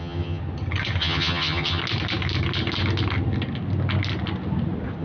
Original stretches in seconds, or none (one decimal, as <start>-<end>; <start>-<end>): 0.4-1.0; 1.8-5.0